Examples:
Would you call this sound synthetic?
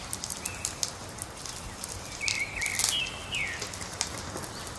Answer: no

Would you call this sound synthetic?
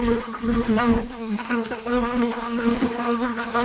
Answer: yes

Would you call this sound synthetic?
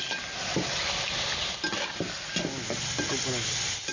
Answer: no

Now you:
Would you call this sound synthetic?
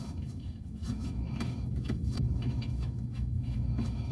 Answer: yes